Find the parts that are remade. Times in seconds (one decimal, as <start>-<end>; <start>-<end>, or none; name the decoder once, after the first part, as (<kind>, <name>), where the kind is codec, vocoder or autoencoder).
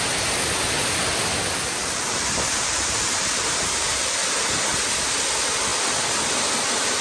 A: 1.8-4.7 (vocoder, BigVGAN v2)